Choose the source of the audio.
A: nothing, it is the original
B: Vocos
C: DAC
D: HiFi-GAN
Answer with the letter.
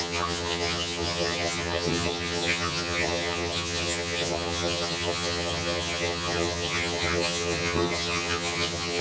D